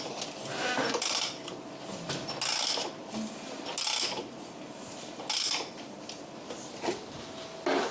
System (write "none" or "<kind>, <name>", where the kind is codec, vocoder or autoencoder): none